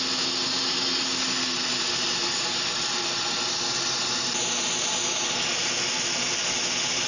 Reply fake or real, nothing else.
real